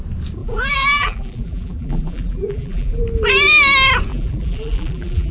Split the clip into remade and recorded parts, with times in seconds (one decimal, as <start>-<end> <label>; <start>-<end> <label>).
0.0-0.4 recorded; 0.4-3.0 remade; 3.0-4.1 recorded; 4.1-5.3 remade